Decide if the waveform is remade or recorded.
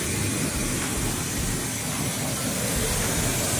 recorded